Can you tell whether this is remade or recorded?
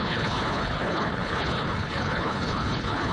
remade